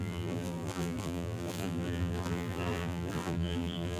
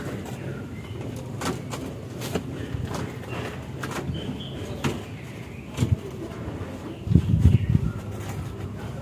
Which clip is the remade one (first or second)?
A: first